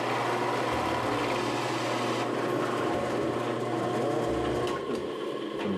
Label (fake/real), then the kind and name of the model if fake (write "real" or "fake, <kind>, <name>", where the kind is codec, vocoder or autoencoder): real